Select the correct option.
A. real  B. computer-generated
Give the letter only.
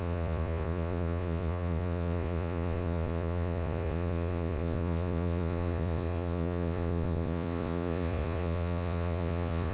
B